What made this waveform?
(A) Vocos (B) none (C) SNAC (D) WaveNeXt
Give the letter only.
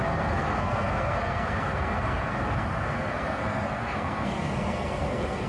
C